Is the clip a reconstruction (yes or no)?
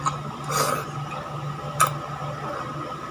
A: no